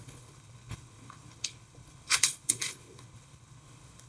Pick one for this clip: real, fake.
fake